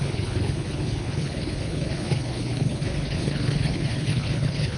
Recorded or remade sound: remade